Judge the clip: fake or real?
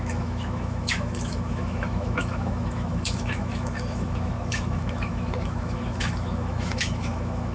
fake